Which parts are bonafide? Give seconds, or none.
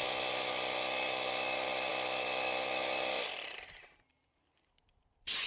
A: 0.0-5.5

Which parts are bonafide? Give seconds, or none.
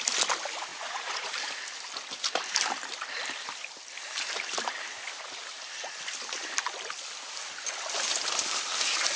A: 0.0-0.7; 1.3-9.2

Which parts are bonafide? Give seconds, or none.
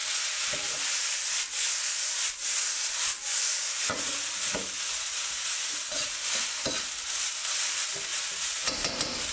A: 0.0-3.5; 6.2-8.1; 8.7-9.3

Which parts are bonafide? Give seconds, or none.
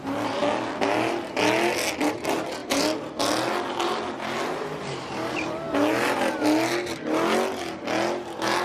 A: 0.0-8.6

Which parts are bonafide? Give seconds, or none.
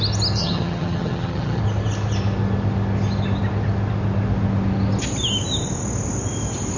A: 0.0-0.4; 1.6-6.8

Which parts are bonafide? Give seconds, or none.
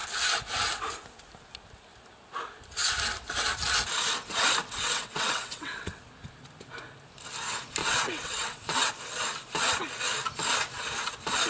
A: 0.0-4.6; 6.0-7.8; 8.9-11.5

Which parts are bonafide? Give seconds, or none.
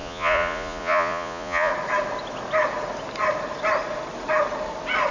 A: 1.7-5.1